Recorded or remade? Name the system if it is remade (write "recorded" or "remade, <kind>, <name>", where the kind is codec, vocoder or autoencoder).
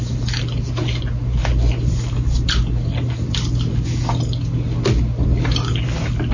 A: recorded